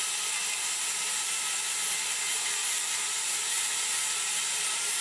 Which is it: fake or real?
real